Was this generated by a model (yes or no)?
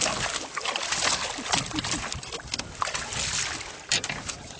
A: no